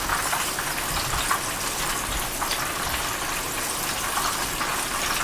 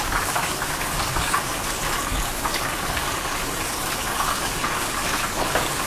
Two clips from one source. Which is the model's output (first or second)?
second